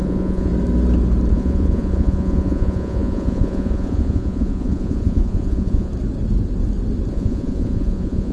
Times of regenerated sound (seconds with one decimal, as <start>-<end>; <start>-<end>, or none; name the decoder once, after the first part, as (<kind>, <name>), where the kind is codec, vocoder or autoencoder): 0.0-0.5 (vocoder, Vocos); 1.3-5.9; 7.1-8.3